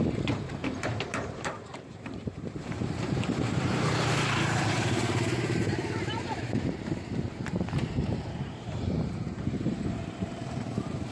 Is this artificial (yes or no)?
yes